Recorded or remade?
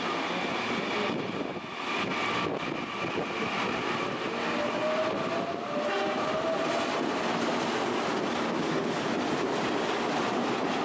recorded